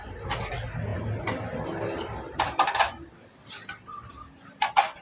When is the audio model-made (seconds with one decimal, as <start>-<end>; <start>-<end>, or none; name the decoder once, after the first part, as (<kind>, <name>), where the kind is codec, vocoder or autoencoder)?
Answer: none